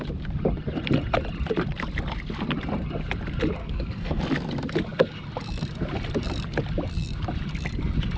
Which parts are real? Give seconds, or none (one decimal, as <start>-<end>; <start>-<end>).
0.0-3.6; 4.2-8.2